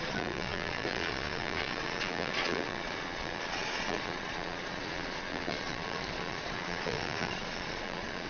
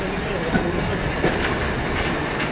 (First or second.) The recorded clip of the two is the second